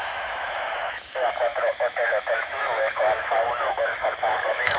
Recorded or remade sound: remade